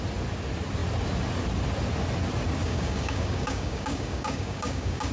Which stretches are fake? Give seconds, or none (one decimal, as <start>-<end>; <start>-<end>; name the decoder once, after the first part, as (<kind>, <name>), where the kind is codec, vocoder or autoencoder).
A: 2.6-5.1 (codec, DAC)